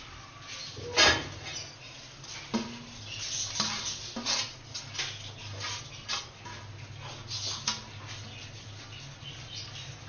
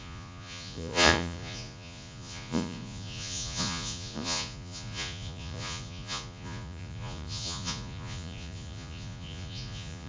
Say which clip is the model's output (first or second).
second